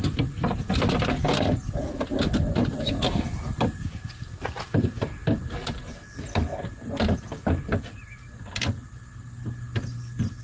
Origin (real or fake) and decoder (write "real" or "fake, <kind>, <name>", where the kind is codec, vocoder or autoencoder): real